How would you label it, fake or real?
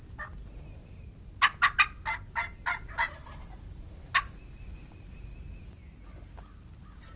real